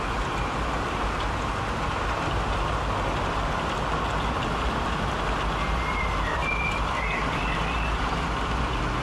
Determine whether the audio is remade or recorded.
recorded